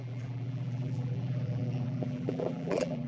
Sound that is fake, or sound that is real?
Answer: fake